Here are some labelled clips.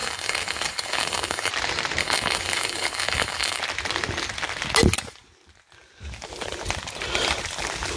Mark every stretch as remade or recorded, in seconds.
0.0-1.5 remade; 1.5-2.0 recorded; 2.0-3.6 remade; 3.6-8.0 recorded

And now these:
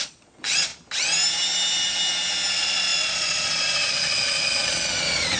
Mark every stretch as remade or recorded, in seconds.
0.0-0.7 remade; 0.7-2.5 recorded; 2.5-5.4 remade

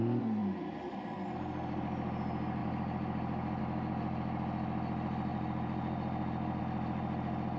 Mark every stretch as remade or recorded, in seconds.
0.0-0.4 recorded; 0.4-1.1 remade; 1.1-2.6 recorded; 2.6-3.6 remade; 3.6-5.3 recorded; 5.3-6.6 remade; 6.6-7.6 recorded

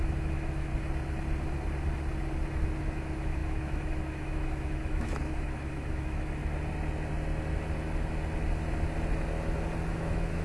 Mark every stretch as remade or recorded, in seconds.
0.0-0.7 remade; 0.7-2.8 recorded; 2.8-6.4 remade; 6.4-9.9 recorded; 9.9-10.4 remade